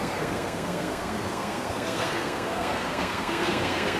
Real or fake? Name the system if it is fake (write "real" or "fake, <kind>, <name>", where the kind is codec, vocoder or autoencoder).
fake, codec, SNAC